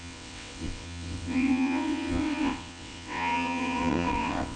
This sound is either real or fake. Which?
fake